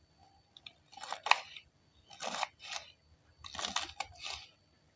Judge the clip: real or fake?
real